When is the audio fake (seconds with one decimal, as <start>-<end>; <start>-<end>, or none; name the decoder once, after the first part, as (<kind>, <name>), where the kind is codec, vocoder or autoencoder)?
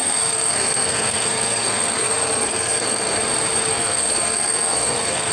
0.0-3.2 (codec, SNAC); 3.7-5.3